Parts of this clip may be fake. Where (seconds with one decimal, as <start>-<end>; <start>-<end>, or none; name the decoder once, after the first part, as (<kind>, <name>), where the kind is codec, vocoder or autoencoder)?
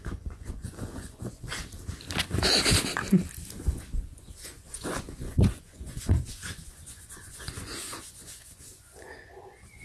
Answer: 0.0-1.5 (vocoder, Vocos); 3.6-9.8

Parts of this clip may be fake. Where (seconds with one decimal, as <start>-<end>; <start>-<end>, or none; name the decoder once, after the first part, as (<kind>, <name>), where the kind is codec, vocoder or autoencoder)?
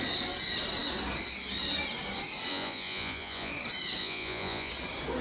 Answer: 2.5-3.5 (vocoder, Vocos); 4.0-4.7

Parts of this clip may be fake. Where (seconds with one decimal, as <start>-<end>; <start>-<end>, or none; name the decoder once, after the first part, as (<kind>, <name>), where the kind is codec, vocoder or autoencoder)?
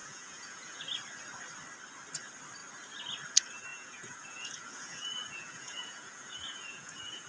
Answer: 0.0-0.8 (vocoder, Vocos); 3.7-7.3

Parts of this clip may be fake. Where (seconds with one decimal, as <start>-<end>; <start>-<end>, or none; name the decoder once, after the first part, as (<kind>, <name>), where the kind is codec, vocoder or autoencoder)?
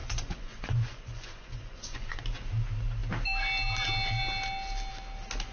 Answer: 0.0-2.2 (vocoder, Vocos)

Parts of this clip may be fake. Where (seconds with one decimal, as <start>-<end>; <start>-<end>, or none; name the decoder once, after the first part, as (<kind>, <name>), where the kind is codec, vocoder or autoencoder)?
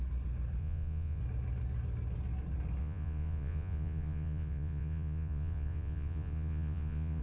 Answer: 0.6-1.2 (vocoder, Vocos); 2.8-7.2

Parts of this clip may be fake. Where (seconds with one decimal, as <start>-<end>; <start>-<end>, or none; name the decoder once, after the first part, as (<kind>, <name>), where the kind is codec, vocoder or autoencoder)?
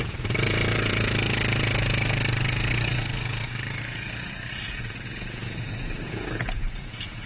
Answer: 0.0-7.3 (vocoder, Vocos)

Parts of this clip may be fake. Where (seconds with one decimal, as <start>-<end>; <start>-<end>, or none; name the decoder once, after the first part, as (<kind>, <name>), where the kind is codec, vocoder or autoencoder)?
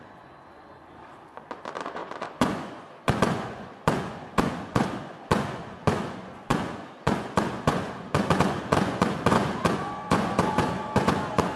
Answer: 0.0-11.6 (vocoder, Vocos)